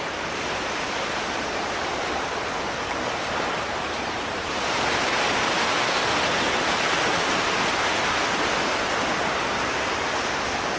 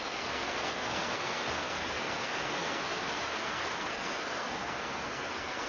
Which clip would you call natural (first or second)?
first